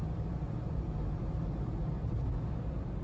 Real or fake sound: real